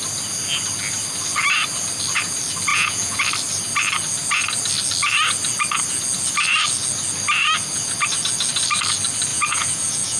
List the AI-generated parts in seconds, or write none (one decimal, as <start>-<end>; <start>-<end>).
2.7-3.2; 9.3-10.2